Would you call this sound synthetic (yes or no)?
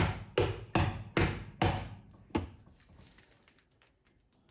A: no